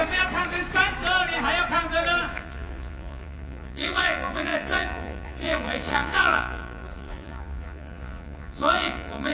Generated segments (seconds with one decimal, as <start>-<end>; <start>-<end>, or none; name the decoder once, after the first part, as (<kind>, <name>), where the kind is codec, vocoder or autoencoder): 2.3-9.3 (vocoder, Vocos)